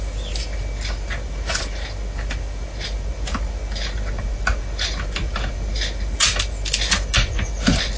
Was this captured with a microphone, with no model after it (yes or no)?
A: yes